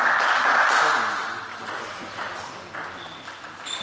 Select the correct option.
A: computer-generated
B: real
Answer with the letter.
B